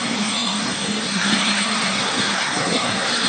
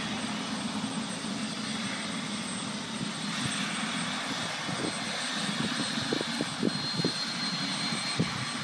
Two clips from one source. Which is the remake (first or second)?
first